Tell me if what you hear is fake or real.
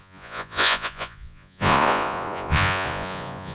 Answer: fake